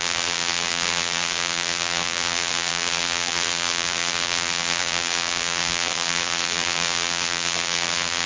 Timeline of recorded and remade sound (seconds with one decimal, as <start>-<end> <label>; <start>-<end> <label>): 0.0-8.3 remade